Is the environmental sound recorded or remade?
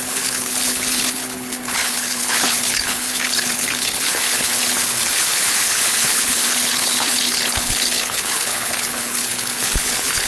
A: remade